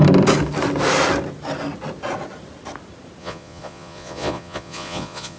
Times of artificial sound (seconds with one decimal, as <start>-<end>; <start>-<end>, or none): 3.2-5.4